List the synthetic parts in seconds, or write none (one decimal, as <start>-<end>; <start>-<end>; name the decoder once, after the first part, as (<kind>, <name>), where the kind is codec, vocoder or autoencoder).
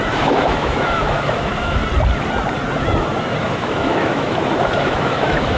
0.0-1.8 (autoencoder, DAC-VAE); 3.4-5.6